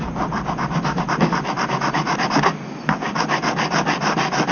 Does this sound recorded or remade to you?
recorded